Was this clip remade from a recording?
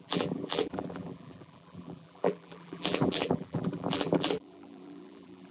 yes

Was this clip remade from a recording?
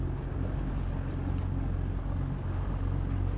no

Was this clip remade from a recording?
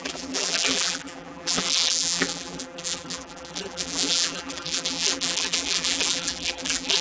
yes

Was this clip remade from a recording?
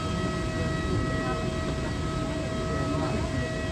no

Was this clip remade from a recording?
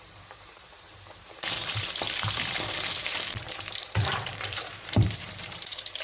yes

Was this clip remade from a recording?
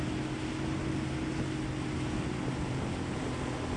no